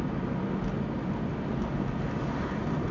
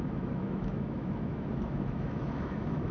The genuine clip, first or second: first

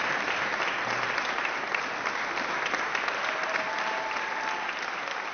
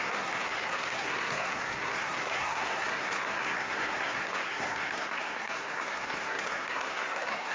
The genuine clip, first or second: first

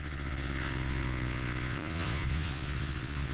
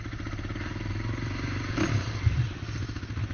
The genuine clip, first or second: second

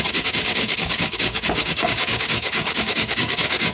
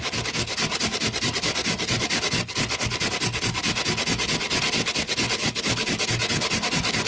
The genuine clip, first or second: second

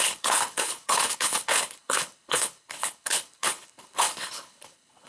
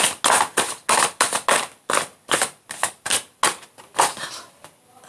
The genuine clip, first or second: second